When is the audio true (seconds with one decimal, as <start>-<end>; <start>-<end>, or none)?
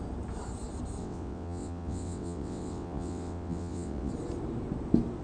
0.0-1.0; 4.1-5.2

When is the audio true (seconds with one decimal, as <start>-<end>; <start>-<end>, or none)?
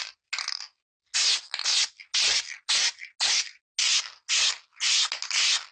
0.0-5.7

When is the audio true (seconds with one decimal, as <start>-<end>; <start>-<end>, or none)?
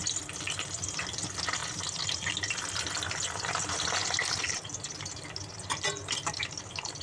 0.0-7.0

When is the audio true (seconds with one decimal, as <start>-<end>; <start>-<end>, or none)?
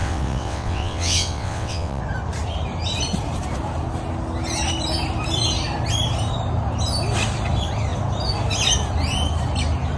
2.0-10.0